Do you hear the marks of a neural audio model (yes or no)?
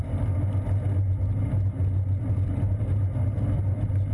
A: no